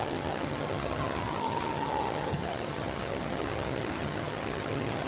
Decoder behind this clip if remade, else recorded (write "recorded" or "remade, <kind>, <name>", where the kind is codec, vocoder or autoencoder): remade, vocoder, HiFi-GAN